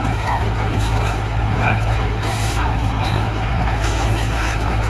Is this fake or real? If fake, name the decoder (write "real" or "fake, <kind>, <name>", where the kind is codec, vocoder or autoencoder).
fake, codec, SNAC